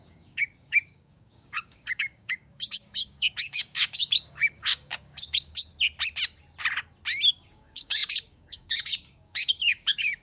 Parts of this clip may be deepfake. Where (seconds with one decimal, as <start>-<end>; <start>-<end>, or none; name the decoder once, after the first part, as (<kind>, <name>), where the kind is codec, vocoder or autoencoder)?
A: 0.0-5.7 (codec, DAC); 7.3-10.2